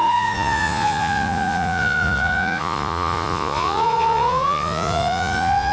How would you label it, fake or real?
fake